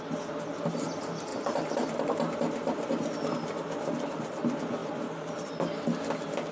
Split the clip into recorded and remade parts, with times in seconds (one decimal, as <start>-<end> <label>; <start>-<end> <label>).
0.0-1.3 recorded; 1.3-2.0 remade; 2.0-6.5 recorded